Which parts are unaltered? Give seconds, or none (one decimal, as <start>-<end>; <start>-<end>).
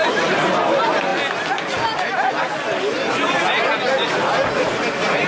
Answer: 0.0-5.3